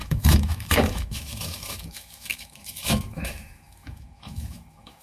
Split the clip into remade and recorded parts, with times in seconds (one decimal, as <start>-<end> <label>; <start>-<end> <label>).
0.0-5.0 remade